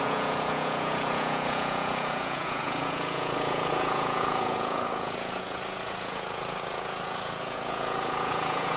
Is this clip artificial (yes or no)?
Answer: yes